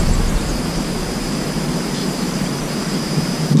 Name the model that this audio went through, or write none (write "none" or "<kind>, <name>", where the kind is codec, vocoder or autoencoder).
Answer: vocoder, BigVGAN v2